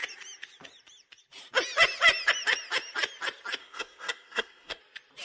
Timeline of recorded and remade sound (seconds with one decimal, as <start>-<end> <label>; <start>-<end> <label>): 0.0-3.6 recorded; 3.6-4.8 remade; 4.8-5.2 recorded